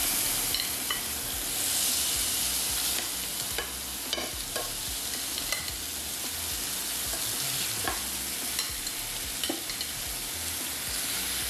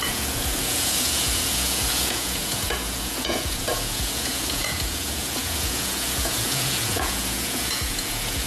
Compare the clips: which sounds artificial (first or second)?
second